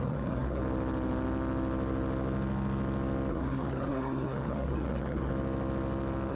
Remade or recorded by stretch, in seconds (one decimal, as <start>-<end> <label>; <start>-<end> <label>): 0.0-0.6 remade; 0.6-3.3 recorded; 3.3-5.3 remade; 5.3-6.3 recorded